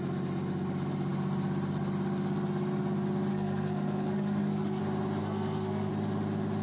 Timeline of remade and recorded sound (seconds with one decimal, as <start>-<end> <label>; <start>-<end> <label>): 0.0-3.3 recorded; 3.3-4.8 remade; 4.8-5.2 recorded; 5.2-5.9 remade; 5.9-6.6 recorded